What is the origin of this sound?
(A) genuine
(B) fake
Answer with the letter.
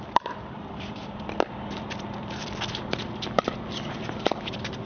B